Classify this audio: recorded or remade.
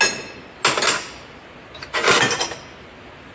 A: recorded